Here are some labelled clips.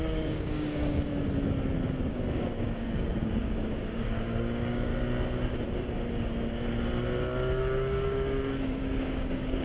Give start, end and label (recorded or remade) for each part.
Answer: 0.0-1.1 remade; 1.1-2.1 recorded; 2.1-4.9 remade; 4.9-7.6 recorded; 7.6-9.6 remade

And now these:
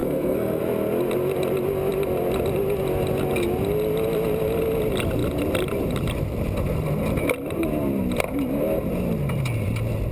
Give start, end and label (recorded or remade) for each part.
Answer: 0.0-0.6 remade; 0.6-10.1 recorded

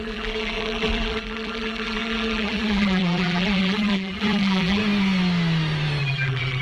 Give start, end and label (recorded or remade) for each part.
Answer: 0.0-4.8 remade; 4.8-6.0 recorded; 6.0-6.6 remade

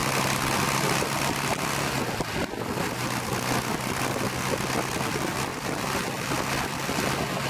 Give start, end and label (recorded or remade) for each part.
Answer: 0.0-5.5 recorded; 5.5-6.5 remade; 6.5-7.5 recorded

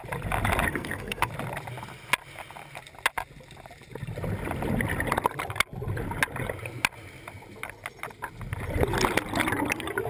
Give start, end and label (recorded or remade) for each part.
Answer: 0.0-0.7 recorded; 0.7-1.3 remade; 1.3-10.1 recorded